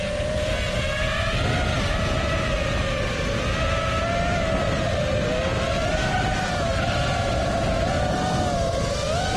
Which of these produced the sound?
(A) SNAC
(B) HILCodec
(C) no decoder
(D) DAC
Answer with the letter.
C